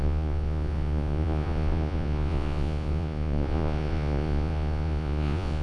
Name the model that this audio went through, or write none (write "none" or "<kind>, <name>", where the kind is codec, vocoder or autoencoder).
vocoder, Vocos